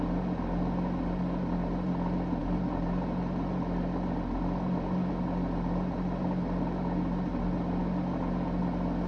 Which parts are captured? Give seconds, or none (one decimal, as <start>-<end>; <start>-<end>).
0.0-9.1